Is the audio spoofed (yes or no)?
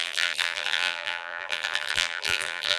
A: yes